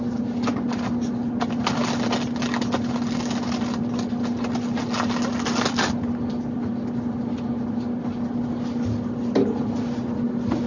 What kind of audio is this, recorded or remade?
recorded